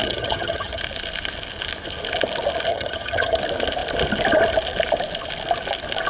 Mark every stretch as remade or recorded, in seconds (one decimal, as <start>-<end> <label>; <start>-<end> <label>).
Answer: 0.0-0.8 remade; 0.8-2.7 recorded; 2.7-3.4 remade; 3.4-6.1 recorded